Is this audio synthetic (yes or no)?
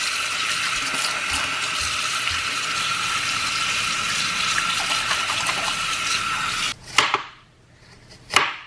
no